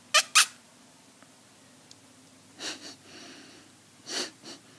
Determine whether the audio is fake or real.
real